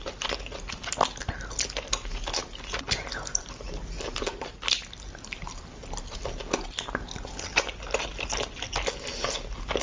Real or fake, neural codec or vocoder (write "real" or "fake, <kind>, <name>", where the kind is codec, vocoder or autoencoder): real